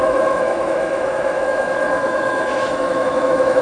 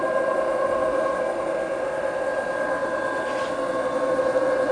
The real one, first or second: second